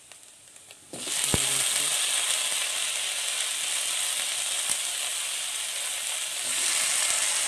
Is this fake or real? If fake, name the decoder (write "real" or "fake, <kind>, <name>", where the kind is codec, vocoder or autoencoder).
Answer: real